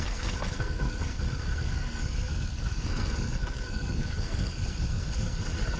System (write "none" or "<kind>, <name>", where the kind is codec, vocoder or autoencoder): codec, SNAC